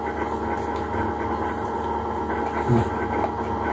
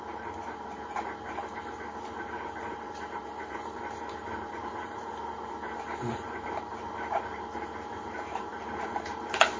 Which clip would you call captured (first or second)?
first